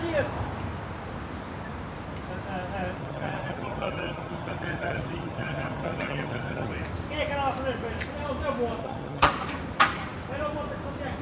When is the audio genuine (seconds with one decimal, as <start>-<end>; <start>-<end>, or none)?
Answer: 0.0-3.0; 6.7-8.8; 9.3-11.2